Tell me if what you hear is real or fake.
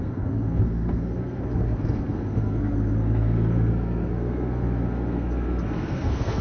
fake